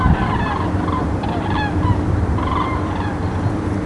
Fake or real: fake